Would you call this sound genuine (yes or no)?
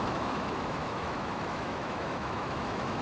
no